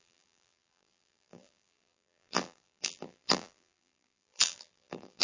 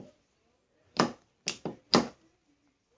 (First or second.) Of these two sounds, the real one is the second